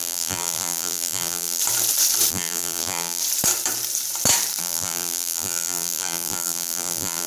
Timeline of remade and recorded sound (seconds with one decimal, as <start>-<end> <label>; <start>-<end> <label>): 0.0-1.6 remade; 1.6-2.3 recorded; 2.3-3.2 remade; 3.2-4.6 recorded; 4.6-7.3 remade